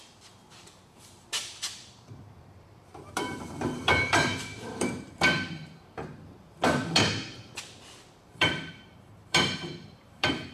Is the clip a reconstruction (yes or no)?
yes